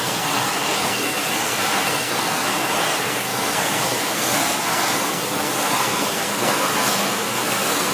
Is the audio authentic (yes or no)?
no